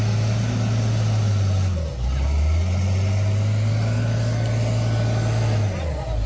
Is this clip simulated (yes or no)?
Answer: no